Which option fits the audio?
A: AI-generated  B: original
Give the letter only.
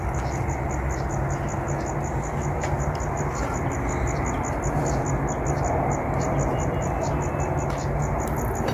B